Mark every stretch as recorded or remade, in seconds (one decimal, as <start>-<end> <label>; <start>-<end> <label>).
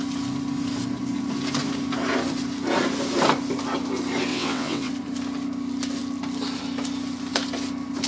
0.0-4.3 recorded; 4.3-4.9 remade; 4.9-8.1 recorded